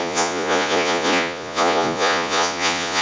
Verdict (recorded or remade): remade